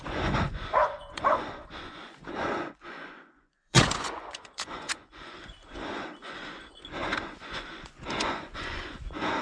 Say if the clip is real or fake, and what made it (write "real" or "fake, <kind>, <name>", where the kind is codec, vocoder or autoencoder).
fake, vocoder, Vocos